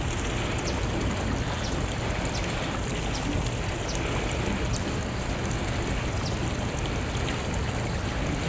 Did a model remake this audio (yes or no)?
no